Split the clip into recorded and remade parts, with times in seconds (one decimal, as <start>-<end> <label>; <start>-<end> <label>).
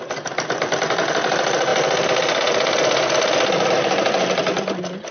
0.0-5.1 recorded